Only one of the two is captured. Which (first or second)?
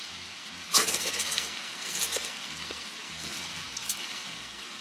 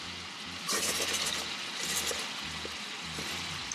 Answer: second